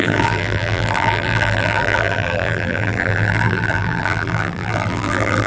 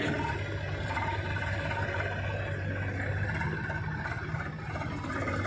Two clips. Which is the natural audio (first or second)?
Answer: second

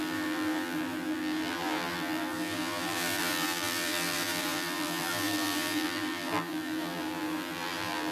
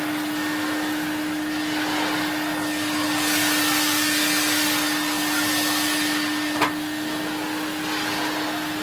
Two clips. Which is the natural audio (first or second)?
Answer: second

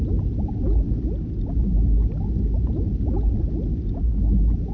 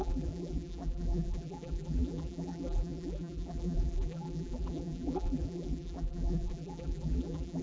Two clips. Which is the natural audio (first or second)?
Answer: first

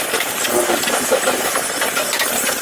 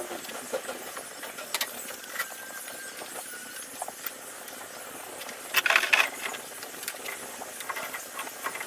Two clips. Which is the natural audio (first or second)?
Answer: second